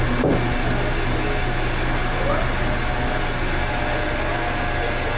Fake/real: real